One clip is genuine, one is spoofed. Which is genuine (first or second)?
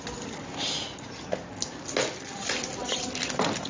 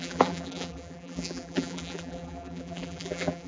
first